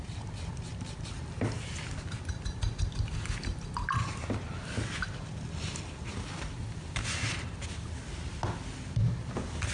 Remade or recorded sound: recorded